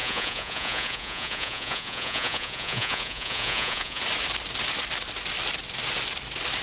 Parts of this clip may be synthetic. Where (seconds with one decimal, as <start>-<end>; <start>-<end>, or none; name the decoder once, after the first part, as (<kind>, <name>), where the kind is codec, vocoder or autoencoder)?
0.0-4.0 (vocoder, Vocos)